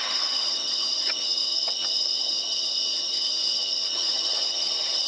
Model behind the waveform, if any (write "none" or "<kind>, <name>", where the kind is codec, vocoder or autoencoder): vocoder, HiFi-GAN